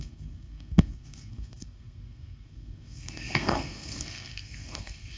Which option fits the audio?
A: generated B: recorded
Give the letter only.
A